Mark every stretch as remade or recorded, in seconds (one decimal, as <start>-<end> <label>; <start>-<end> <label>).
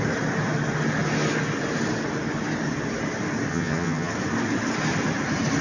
0.0-3.5 recorded; 3.5-4.1 remade; 4.1-5.6 recorded